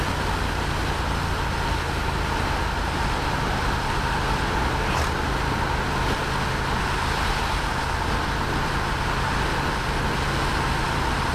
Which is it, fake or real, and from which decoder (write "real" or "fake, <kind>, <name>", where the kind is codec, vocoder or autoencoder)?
real